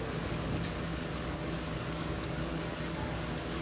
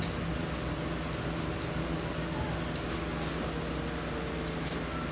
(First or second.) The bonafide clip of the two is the second